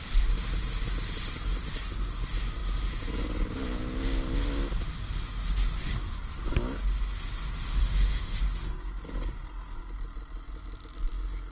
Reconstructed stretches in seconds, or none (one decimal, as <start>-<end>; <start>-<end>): 7.8-8.4